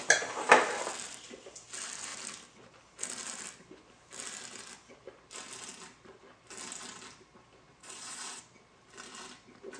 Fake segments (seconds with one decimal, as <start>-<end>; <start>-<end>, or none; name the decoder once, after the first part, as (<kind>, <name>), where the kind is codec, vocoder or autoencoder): 7.8-8.4 (vocoder, Vocos)